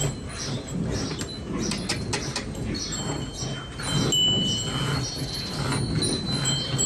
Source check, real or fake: real